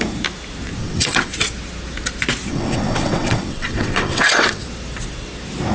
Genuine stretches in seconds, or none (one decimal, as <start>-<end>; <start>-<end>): 0.0-0.8; 1.3-2.5; 4.6-5.7